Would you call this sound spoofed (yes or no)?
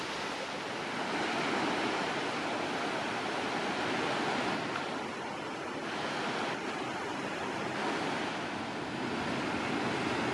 no